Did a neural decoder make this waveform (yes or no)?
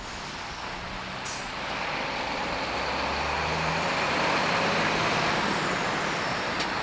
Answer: no